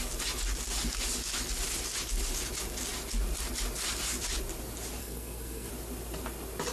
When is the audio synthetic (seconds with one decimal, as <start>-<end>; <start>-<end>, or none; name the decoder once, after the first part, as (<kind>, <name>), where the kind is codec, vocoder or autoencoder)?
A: 5.0-5.7 (codec, SNAC)